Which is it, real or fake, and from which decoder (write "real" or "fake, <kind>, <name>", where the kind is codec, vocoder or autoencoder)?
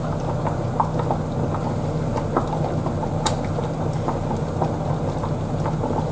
real